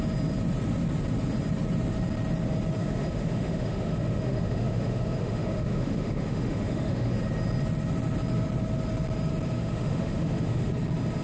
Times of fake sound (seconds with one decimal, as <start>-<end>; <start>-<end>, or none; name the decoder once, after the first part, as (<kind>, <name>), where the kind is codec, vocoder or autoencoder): 2.8-7.1 (autoencoder, DAC-VAE); 9.6-10.7